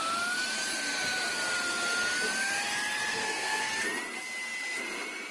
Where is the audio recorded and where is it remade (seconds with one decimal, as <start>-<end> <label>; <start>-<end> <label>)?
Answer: 0.0-3.1 recorded; 3.1-3.7 remade; 3.7-5.3 recorded